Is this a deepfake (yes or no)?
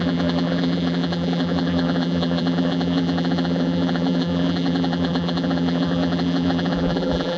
yes